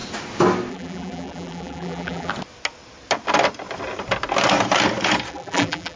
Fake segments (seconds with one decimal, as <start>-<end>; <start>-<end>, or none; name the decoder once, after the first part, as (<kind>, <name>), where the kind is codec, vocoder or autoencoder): 0.7-2.3 (vocoder, BigVGAN v2); 5.3-6.0